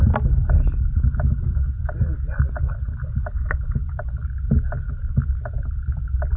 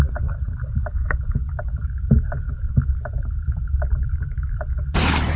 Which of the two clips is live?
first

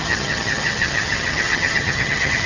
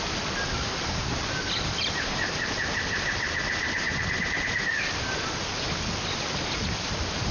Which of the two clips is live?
second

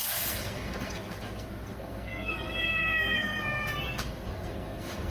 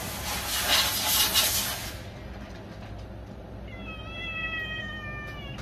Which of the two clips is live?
second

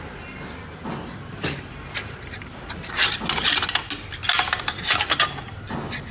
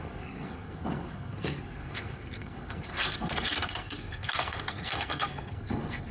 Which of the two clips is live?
first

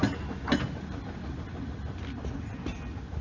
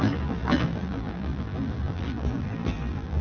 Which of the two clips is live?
first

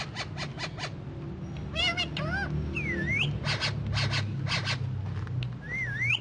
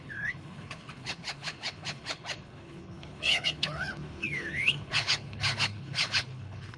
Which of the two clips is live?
first